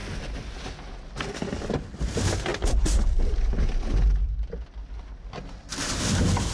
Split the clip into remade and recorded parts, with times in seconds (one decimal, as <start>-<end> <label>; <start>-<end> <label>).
0.0-2.5 recorded; 2.5-6.1 remade; 6.1-6.5 recorded